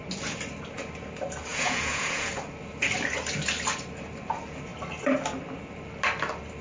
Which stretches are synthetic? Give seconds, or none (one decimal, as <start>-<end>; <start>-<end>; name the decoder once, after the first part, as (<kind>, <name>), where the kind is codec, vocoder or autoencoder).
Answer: 1.5-2.3 (vocoder, Vocos)